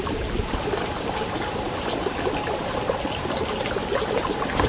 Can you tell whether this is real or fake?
real